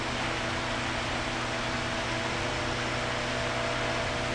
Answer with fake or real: real